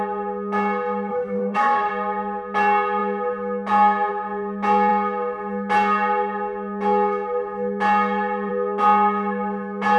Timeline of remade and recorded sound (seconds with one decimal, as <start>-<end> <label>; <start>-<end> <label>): 0.0-1.1 recorded; 1.1-1.9 remade; 1.9-10.0 recorded